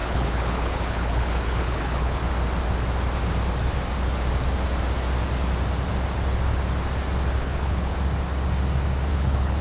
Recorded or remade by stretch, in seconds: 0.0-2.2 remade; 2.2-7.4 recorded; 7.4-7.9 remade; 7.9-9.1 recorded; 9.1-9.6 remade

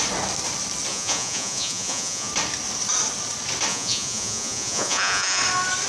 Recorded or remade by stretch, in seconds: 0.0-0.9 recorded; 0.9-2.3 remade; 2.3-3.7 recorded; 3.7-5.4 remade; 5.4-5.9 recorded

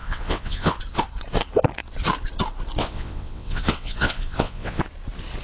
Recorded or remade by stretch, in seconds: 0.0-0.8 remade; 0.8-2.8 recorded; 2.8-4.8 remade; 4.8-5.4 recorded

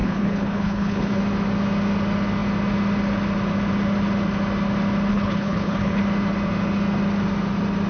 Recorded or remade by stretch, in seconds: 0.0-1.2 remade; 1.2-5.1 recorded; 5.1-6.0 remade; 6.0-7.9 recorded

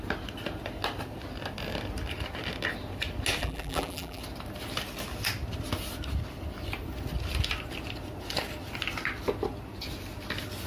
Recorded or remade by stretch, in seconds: 0.0-3.4 recorded; 3.4-4.2 remade; 4.2-10.7 recorded